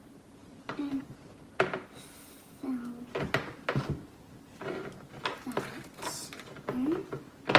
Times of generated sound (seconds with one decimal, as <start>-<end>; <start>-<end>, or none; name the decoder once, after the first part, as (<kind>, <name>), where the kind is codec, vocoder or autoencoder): none